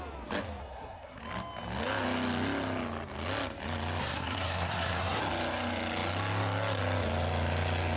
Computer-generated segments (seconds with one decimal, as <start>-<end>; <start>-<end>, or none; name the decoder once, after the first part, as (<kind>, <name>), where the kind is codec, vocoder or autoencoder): 0.6-1.2 (codec, SNAC); 4.0-5.2